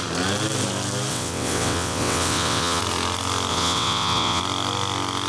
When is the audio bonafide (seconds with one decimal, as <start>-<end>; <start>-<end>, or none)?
0.0-1.1; 2.8-3.5; 4.4-5.3